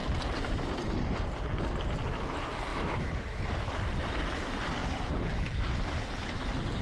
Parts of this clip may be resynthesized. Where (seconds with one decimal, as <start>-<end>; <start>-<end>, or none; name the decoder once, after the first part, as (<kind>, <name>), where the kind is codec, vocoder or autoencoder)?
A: 2.7-3.4 (autoencoder, DAC-VAE)

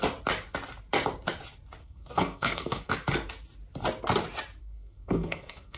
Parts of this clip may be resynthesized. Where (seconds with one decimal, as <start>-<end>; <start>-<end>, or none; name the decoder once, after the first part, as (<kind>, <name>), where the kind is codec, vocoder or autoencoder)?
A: 1.8-2.9 (codec, SNAC); 4.6-5.8